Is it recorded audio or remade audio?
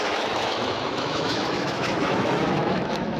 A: remade